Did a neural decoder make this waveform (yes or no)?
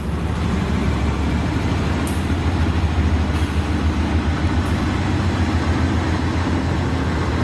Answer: no